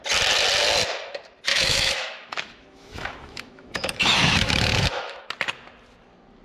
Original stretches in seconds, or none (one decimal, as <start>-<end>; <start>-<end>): 0.0-1.5; 5.3-6.4